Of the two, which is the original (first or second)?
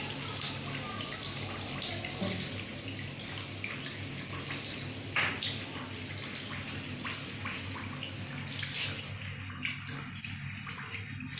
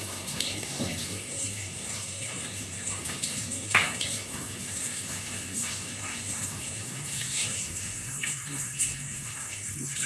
first